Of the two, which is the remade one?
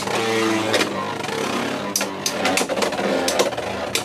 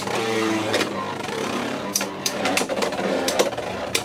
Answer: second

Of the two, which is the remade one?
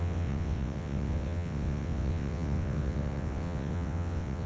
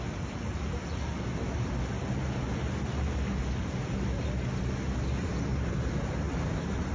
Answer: first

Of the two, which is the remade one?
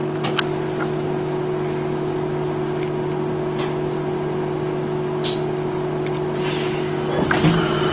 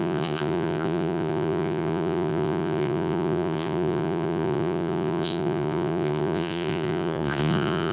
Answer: second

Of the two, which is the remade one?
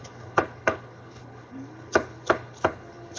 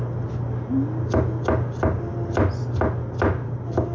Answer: first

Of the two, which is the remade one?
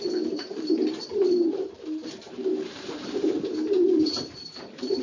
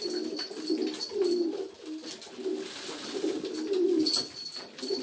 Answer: first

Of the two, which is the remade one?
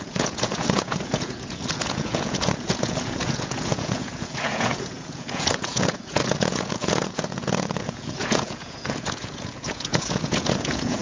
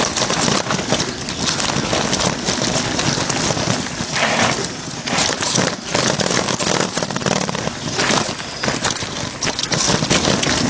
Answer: first